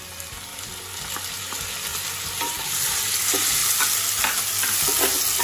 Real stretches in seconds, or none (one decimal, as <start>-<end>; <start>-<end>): 0.0-0.5; 1.4-1.9; 3.0-5.4